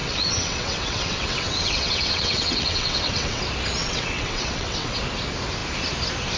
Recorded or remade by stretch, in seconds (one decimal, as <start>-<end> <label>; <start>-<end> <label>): 0.0-3.4 remade; 3.4-3.8 recorded; 3.8-5.0 remade; 5.0-6.4 recorded